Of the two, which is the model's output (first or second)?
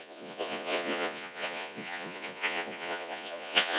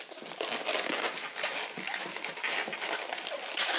first